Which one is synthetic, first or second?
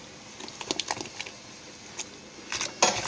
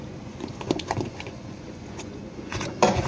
second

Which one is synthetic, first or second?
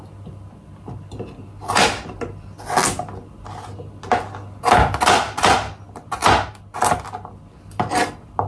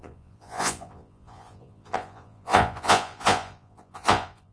second